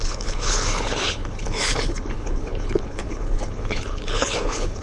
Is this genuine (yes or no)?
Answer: no